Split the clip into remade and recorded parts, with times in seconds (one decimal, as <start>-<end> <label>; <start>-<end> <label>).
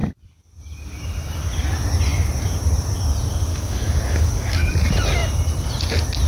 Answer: 0.0-3.5 recorded; 3.5-4.7 remade; 4.7-6.3 recorded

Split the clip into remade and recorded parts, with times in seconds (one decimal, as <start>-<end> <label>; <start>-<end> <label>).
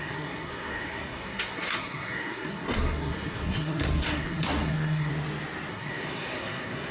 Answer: 0.0-5.1 remade; 5.1-5.7 recorded; 5.7-6.9 remade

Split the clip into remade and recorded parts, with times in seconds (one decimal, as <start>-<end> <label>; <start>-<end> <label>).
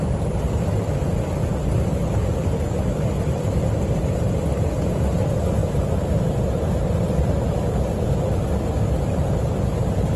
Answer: 0.0-10.2 recorded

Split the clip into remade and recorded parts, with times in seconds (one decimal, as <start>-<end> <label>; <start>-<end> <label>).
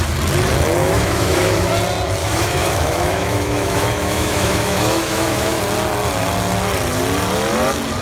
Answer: 0.0-0.8 recorded; 0.8-1.7 remade; 1.7-2.2 recorded; 2.2-5.6 remade; 5.6-8.0 recorded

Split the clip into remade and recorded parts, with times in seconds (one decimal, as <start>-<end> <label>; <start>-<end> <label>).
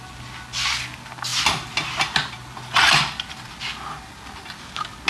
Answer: 0.0-5.1 recorded